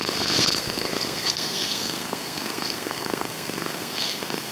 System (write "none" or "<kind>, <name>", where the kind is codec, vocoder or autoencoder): codec, SNAC